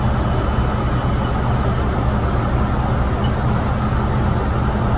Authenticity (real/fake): real